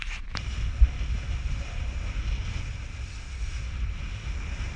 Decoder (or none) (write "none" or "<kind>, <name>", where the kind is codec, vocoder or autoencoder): none